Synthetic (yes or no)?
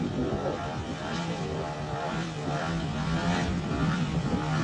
yes